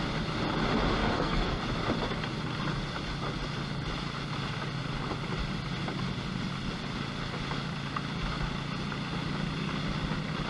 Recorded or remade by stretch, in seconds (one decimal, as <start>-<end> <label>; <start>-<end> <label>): 0.0-1.0 recorded; 1.0-1.6 remade; 1.6-10.5 recorded